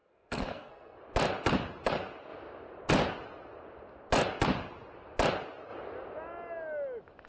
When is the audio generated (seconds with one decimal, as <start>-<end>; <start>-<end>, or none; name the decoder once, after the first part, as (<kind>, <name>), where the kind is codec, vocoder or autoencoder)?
0.0-1.0 (codec, SNAC)